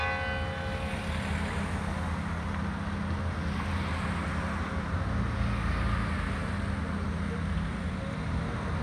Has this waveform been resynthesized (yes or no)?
no